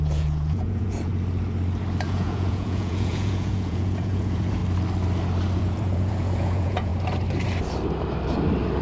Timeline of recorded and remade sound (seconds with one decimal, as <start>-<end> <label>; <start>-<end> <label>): 0.0-1.1 remade; 1.1-2.1 recorded; 2.1-4.6 remade; 4.6-5.6 recorded; 5.6-6.9 remade; 6.9-8.8 recorded